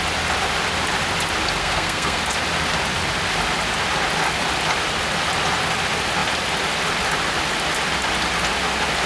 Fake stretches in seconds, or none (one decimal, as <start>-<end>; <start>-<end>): 1.6-2.2